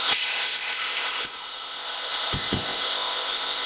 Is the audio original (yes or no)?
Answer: no